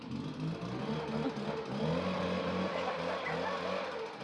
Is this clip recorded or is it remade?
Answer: recorded